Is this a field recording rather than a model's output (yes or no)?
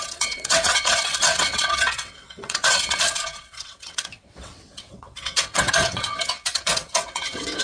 no